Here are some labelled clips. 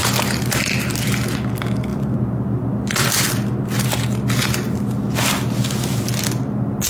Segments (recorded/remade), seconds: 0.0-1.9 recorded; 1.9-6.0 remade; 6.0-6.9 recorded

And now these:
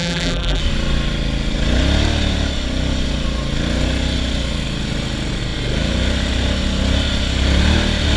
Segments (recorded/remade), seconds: 0.0-0.6 remade; 0.6-8.2 recorded

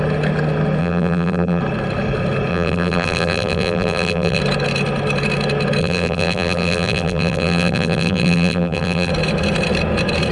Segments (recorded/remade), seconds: 0.0-0.8 recorded; 0.8-1.6 remade; 1.6-2.5 recorded; 2.5-4.4 remade; 4.4-5.8 recorded; 5.8-9.1 remade; 9.1-10.3 recorded